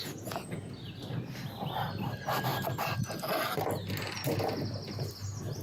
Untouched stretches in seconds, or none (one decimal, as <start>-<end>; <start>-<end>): 0.7-5.6